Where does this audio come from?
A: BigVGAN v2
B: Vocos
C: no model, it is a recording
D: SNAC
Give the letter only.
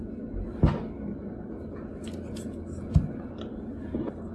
C